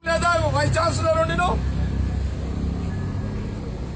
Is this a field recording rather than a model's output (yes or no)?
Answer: yes